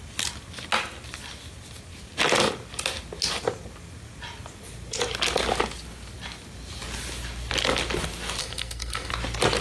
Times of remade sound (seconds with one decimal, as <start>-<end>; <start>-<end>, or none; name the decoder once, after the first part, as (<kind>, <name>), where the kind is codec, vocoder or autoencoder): 8.4-9.1 (codec, SNAC)